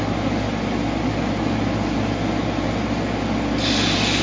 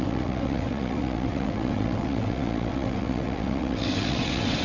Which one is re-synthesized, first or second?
second